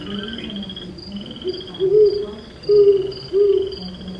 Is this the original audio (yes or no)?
yes